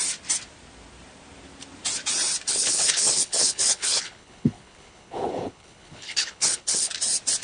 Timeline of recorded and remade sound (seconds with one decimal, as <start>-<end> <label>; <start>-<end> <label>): 0.0-2.5 recorded; 2.5-6.9 remade; 6.9-7.4 recorded